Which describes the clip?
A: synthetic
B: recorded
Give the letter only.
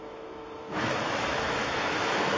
A